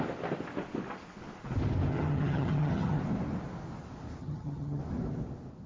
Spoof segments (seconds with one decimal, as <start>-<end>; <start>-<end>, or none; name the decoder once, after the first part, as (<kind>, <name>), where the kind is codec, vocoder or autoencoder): 1.9-3.0 (vocoder, HiFi-GAN); 4.2-4.8